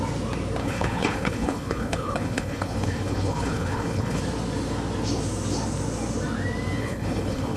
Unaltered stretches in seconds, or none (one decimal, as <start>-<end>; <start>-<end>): 0.0-0.6; 4.2-6.8